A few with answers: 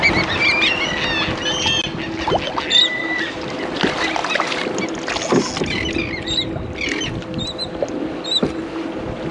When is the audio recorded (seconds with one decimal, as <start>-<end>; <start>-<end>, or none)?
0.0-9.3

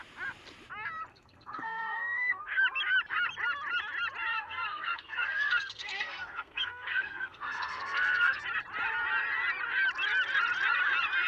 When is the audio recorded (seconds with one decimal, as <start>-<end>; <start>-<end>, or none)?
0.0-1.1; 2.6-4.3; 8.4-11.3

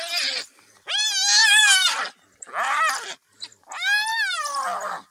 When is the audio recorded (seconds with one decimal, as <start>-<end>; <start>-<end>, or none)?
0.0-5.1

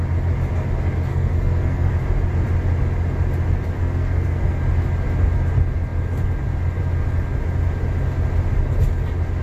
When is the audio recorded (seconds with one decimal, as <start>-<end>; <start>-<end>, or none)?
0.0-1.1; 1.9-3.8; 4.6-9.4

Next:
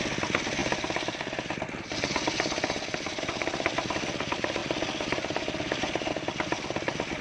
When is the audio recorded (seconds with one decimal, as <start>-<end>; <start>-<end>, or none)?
0.0-7.2

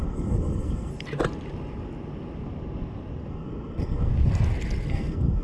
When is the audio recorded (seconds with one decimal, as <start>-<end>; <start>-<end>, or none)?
0.9-3.3; 4.1-4.9

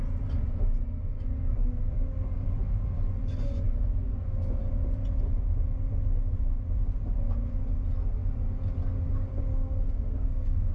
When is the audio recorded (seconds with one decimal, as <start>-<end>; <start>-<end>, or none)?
0.0-9.5

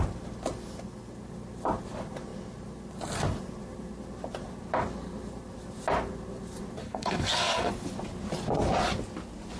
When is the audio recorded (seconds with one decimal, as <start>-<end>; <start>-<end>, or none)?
0.0-6.8; 7.7-9.6